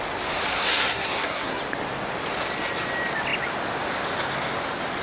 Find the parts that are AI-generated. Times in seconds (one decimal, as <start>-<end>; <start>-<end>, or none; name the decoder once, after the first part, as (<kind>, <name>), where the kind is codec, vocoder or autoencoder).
0.6-1.6 (codec, SNAC)